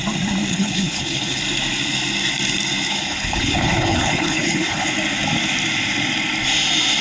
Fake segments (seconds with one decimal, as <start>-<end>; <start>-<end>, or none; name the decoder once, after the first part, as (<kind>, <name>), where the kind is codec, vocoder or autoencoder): 0.5-1.4 (codec, HILCodec); 2.9-4.9